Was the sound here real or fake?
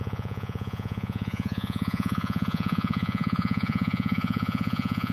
fake